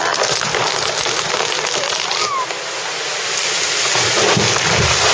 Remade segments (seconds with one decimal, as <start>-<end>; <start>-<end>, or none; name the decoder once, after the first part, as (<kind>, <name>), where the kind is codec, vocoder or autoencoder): none